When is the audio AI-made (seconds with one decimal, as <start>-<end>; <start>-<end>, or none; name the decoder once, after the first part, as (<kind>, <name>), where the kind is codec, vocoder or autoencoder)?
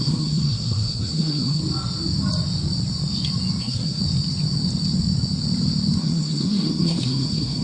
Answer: 0.0-1.6 (codec, SNAC); 3.6-4.0; 6.0-7.6